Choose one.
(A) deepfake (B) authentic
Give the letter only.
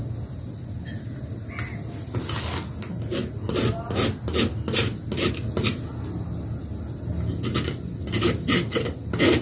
B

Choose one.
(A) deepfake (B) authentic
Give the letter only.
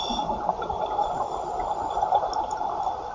B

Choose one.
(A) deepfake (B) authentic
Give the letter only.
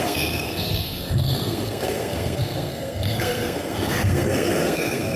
A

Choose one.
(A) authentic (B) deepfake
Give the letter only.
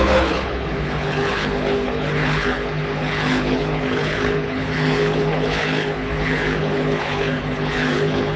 B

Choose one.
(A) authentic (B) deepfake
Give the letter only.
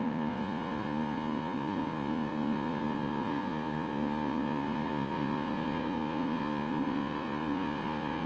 B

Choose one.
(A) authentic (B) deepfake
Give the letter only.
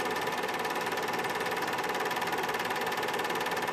A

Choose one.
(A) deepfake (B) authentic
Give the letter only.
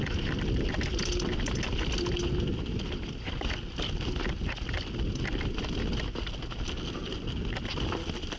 B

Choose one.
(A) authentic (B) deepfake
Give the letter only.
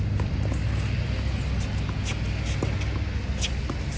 A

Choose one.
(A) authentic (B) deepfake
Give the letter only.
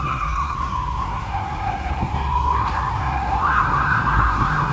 B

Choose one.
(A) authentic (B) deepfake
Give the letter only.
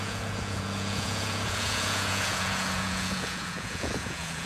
B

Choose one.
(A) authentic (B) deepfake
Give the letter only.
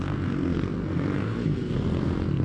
B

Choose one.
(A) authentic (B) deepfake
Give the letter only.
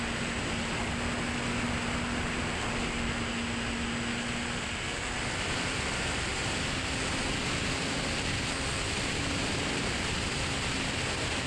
A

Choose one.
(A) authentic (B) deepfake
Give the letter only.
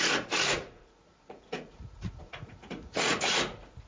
B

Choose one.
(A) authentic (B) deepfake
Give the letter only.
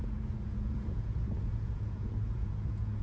B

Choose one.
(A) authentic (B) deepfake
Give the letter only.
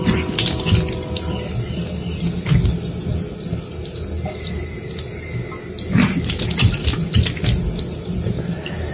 A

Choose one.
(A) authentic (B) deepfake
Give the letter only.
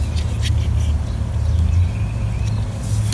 A